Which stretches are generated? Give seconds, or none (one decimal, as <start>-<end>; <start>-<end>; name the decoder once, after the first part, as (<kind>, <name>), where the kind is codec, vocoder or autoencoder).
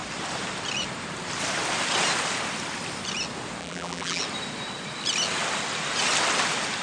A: 3.6-4.2 (vocoder, BigVGAN v2)